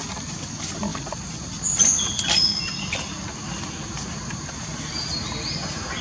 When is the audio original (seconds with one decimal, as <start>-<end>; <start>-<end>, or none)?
0.0-6.0

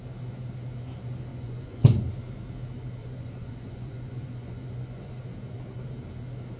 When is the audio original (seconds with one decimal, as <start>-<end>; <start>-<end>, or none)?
0.0-1.3; 2.1-3.0; 5.1-6.6

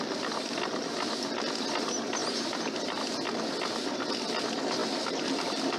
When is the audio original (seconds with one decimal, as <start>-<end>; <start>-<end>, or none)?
0.0-2.2; 3.0-4.8

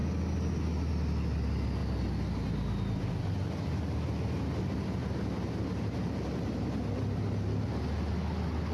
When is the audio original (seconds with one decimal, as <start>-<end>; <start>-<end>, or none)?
0.0-8.7

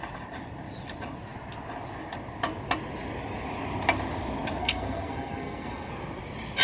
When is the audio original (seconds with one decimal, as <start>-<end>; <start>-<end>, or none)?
0.0-4.6; 5.9-6.6